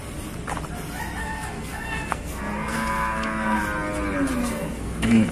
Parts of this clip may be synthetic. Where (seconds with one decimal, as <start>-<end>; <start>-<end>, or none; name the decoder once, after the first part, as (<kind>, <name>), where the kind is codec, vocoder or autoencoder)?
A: 1.2-3.6 (codec, SNAC); 4.4-5.3